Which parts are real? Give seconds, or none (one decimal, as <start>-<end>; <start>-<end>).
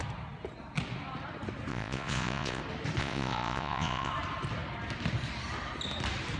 0.0-1.7; 2.6-3.0; 4.1-6.4